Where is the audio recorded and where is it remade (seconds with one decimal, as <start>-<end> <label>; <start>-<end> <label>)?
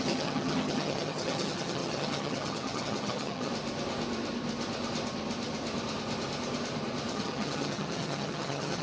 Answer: 0.0-3.5 remade; 3.5-7.1 recorded; 7.1-8.8 remade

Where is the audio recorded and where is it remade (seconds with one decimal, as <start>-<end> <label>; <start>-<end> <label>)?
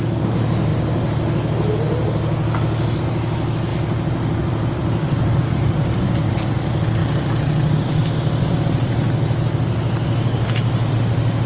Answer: 0.0-11.5 recorded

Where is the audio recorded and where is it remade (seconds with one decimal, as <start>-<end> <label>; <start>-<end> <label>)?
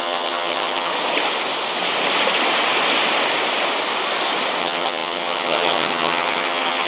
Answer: 0.0-0.9 remade; 0.9-4.6 recorded; 4.6-6.9 remade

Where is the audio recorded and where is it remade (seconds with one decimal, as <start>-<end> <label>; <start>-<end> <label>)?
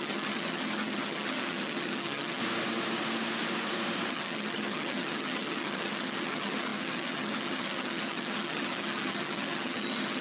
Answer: 0.0-2.4 remade; 2.4-4.1 recorded; 4.1-10.2 remade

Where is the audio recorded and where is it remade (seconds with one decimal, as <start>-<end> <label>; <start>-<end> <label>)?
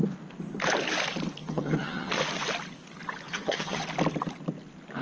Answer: 0.0-1.4 recorded; 1.4-2.1 remade; 2.1-3.3 recorded; 3.3-3.8 remade; 3.8-5.0 recorded